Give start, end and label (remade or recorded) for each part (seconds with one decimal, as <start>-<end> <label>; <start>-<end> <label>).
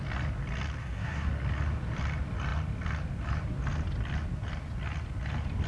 0.0-0.8 recorded; 0.8-1.3 remade; 1.3-5.7 recorded